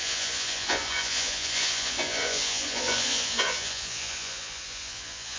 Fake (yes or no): yes